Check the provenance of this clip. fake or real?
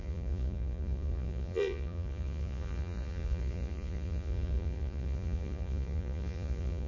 fake